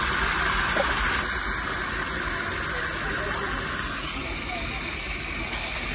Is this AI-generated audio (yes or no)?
no